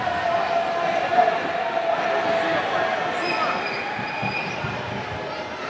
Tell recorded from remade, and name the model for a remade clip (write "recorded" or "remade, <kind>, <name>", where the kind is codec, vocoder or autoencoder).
recorded